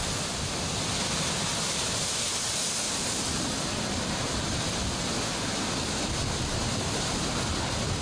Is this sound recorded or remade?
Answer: recorded